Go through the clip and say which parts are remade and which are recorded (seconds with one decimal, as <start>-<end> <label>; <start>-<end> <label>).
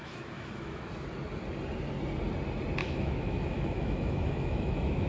0.0-0.9 remade; 0.9-2.8 recorded; 2.8-5.1 remade